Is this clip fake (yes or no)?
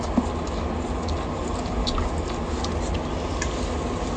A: no